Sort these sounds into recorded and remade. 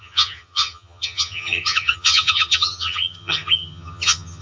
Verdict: remade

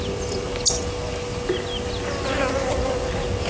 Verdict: recorded